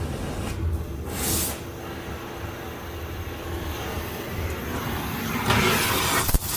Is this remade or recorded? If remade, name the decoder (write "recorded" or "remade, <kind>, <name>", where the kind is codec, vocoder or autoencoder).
recorded